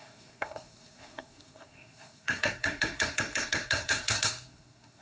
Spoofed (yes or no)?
yes